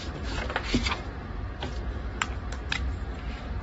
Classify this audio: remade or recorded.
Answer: recorded